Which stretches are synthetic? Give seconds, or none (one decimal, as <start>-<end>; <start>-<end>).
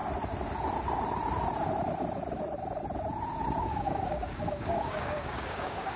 3.6-6.0